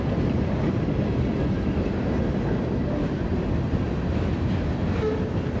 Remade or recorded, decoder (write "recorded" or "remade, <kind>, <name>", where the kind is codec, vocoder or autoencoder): recorded